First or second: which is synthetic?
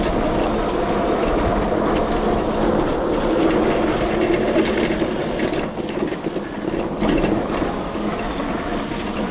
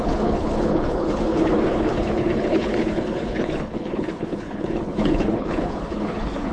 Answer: second